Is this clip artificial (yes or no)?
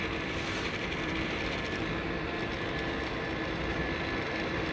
yes